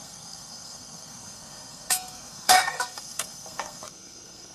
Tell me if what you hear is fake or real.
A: fake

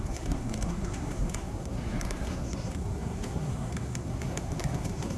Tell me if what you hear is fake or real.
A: fake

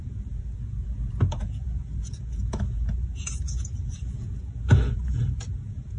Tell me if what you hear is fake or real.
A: fake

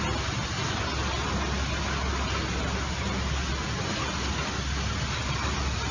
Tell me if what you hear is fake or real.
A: real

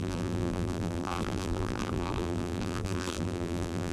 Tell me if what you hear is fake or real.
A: fake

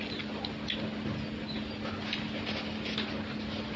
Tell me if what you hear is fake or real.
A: real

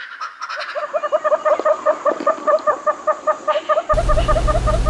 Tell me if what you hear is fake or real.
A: real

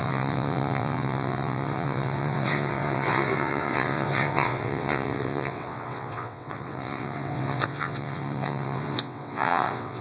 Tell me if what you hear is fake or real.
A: fake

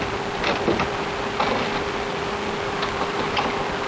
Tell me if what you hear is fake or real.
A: real